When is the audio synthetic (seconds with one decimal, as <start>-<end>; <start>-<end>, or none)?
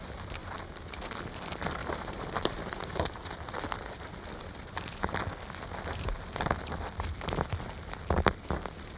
1.8-3.0; 4.4-5.2